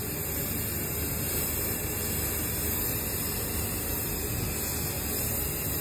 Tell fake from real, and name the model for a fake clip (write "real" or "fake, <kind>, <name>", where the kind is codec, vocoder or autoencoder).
real